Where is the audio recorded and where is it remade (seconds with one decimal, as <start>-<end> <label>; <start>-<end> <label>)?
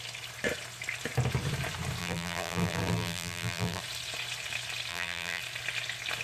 0.0-2.0 recorded; 2.0-3.8 remade; 3.8-4.9 recorded; 4.9-5.4 remade; 5.4-6.2 recorded